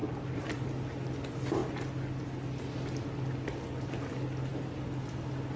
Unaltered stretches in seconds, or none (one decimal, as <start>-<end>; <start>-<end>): 0.0-5.6